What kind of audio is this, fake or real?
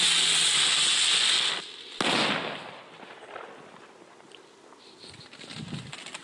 real